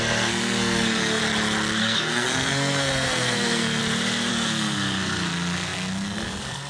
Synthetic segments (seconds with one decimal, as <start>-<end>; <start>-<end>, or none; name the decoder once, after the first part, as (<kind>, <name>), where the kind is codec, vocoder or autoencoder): 0.0-1.2 (codec, SNAC); 1.8-3.8; 4.3-6.7